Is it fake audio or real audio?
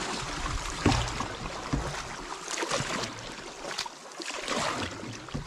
real